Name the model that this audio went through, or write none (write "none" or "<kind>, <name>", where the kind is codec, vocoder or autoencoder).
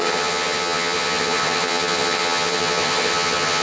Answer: vocoder, HiFi-GAN